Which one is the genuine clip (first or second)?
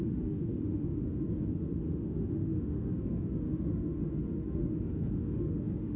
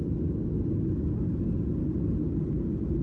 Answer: second